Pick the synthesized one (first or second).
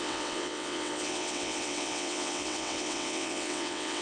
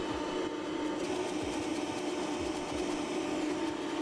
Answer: first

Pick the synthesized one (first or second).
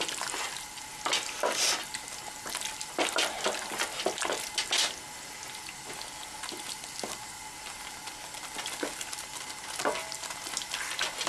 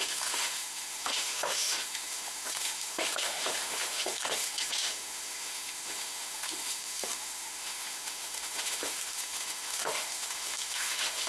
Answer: second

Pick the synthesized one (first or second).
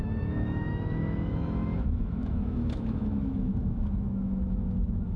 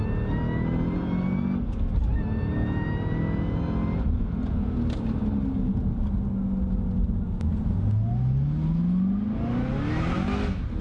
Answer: first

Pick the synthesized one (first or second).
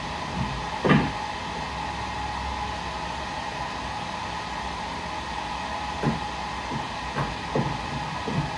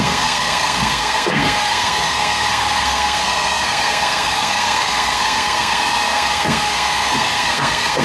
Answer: second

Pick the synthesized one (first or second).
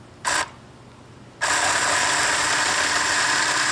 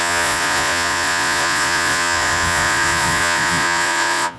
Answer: second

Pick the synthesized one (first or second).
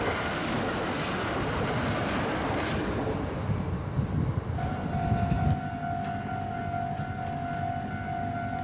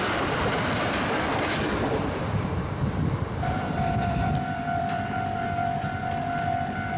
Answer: second